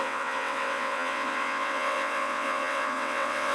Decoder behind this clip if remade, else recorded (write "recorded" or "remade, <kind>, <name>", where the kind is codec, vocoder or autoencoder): remade, vocoder, WaveNeXt